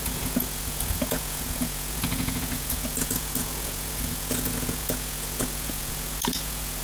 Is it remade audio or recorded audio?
remade